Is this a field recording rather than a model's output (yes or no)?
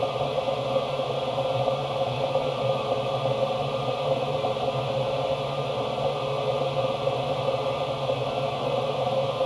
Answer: yes